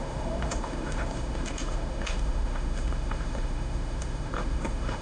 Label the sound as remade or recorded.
remade